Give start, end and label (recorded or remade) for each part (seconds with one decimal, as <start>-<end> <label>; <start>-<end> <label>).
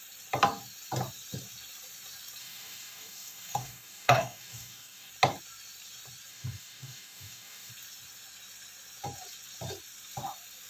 0.0-2.4 recorded; 2.4-5.1 remade; 5.1-6.3 recorded; 6.3-7.7 remade; 7.7-10.7 recorded